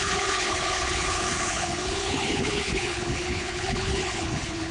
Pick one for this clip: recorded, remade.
remade